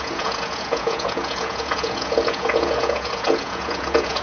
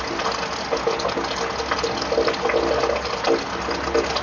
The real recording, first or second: second